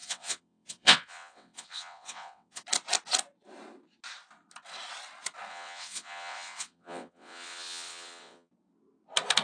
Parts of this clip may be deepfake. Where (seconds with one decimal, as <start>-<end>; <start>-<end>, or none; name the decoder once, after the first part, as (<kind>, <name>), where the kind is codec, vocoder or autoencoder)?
0.0-2.6 (vocoder, WaveNeXt); 5.5-8.5